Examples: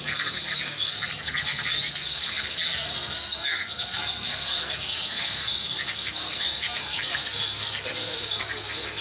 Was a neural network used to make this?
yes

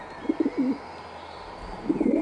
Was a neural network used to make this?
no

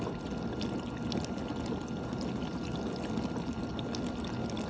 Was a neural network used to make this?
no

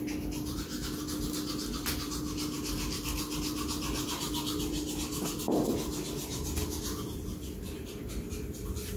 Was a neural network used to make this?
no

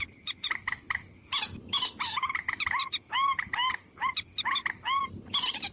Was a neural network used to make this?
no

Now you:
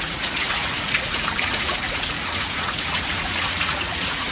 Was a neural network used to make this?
yes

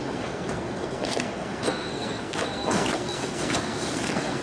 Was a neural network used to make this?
yes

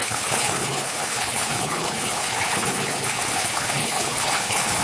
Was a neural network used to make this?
yes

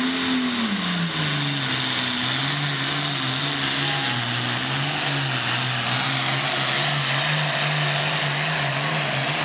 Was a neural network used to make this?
no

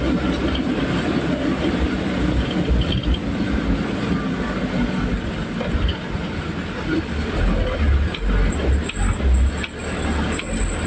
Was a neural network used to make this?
no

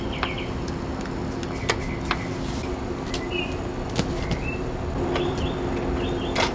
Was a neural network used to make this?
no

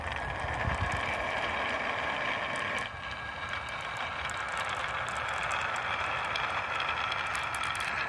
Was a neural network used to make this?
no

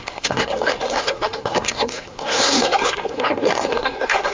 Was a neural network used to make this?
yes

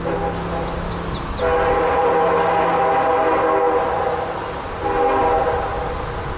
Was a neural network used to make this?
no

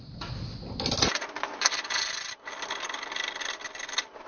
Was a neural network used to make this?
no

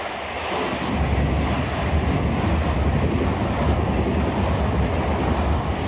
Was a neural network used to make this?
no